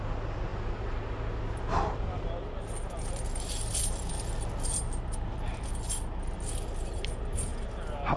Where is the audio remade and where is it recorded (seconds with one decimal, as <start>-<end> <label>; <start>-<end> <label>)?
0.0-8.2 recorded